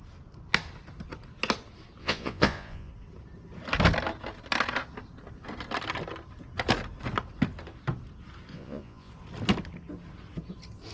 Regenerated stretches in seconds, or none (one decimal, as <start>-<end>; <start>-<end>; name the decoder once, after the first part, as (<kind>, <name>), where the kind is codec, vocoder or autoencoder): 2.0-2.9 (vocoder, Vocos); 8.5-9.1